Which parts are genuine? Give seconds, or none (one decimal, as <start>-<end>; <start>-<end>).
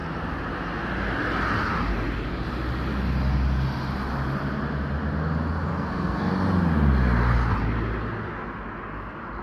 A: 0.0-5.7; 6.3-9.4